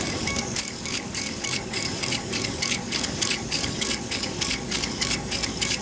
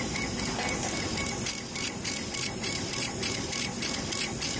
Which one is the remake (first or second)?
first